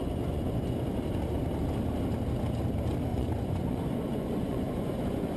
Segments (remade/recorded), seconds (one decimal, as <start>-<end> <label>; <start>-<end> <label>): 0.0-1.0 remade; 1.0-3.1 recorded; 3.1-5.4 remade